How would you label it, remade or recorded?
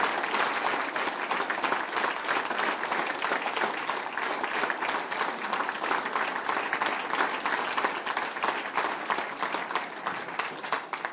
recorded